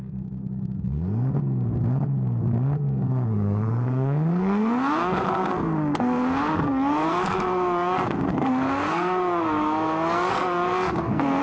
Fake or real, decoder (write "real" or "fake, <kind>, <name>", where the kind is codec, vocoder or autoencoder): fake, codec, SNAC